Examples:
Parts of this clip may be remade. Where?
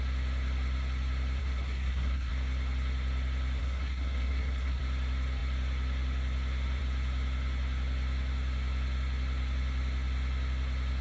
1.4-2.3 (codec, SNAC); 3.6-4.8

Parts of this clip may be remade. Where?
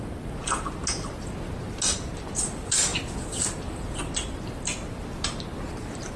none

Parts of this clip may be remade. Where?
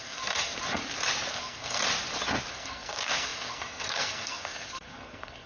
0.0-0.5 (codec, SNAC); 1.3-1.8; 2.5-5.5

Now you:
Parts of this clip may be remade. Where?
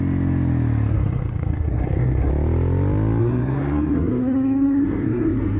0.9-2.3 (codec, SNAC); 3.2-5.6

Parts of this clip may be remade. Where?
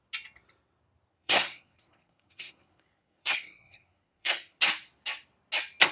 1.1-4.6 (codec, SNAC)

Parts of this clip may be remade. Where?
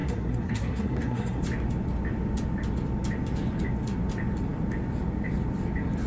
0.0-1.4 (codec, SNAC)